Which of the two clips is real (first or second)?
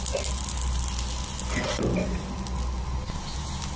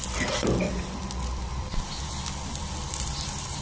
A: first